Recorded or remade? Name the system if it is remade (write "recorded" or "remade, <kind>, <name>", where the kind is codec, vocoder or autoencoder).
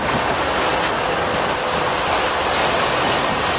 recorded